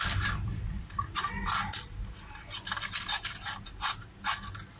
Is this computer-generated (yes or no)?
no